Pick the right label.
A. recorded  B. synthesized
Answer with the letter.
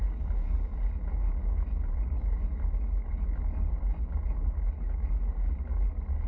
A